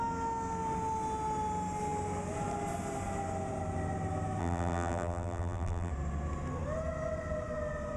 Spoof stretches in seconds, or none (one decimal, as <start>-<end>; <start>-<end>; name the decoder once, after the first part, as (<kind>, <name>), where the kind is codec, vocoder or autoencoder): 4.4-5.9 (vocoder, BigVGAN v2)